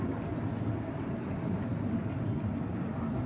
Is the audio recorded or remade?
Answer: remade